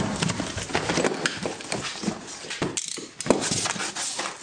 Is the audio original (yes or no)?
yes